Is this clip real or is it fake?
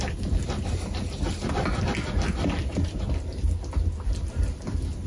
real